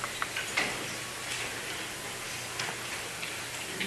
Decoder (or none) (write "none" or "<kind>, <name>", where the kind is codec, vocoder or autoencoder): none